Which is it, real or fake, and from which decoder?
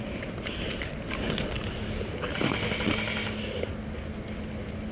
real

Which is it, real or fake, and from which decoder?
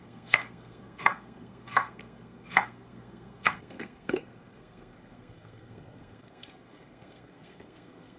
fake, codec, SNAC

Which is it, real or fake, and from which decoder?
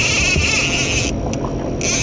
real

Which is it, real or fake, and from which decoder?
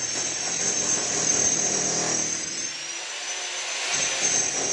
real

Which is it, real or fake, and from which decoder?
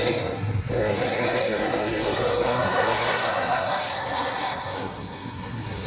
fake, codec, SNAC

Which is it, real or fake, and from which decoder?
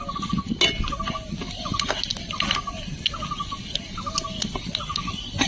real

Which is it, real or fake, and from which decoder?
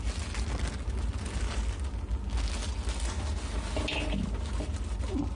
real